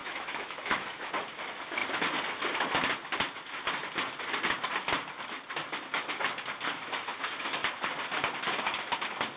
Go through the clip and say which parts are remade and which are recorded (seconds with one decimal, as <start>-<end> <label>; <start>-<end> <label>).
0.0-1.1 remade; 1.1-9.4 recorded